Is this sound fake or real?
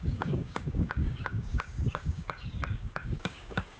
fake